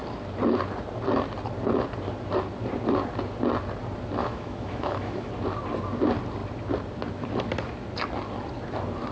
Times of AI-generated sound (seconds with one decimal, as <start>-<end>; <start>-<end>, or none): 4.2-5.3